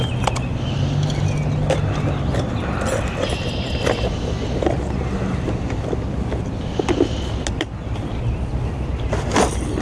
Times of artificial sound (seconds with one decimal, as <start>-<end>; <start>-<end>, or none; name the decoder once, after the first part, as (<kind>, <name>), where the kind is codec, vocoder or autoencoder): none